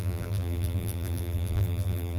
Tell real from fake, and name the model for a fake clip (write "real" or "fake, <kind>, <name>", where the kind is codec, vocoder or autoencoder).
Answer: fake, vocoder, BigVGAN v2